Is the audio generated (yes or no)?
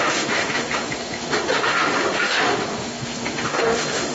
yes